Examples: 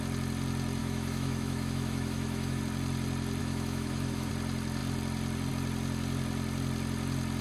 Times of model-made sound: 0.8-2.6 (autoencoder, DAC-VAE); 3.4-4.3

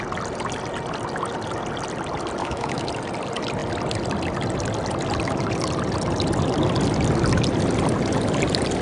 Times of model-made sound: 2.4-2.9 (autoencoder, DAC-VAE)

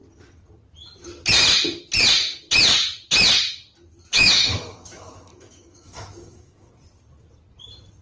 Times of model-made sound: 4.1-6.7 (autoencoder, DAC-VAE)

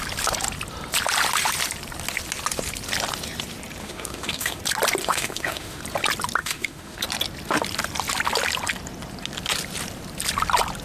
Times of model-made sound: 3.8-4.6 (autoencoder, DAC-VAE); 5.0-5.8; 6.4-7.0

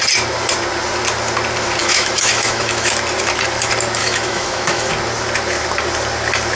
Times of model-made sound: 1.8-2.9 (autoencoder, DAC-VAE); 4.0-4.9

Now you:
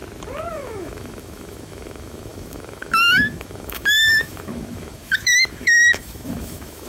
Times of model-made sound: 0.5-6.9 (autoencoder, DAC-VAE)

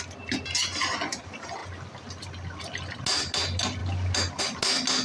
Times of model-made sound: none

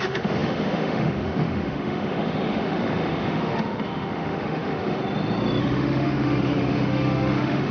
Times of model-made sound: 0.0-5.0 (autoencoder, DAC-VAE); 5.6-7.7